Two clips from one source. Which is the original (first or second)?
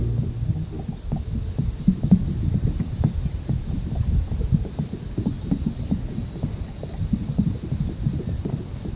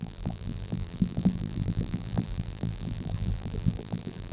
first